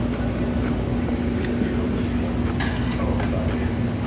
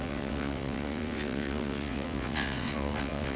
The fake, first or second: second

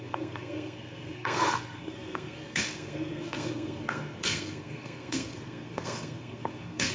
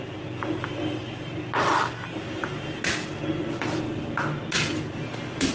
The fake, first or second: first